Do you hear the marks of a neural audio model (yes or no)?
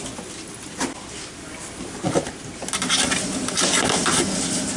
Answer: no